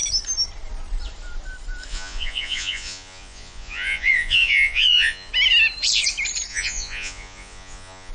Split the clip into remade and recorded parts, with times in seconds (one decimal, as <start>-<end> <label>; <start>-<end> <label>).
0.0-1.9 recorded; 1.9-5.3 remade; 5.3-6.5 recorded; 6.5-8.1 remade